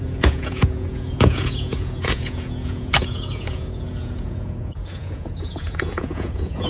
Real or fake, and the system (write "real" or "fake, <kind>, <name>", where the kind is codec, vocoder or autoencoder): fake, vocoder, Vocos